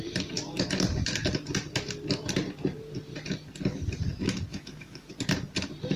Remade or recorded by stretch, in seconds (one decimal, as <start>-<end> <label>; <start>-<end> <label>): 0.0-4.5 recorded; 4.5-5.1 remade; 5.1-6.0 recorded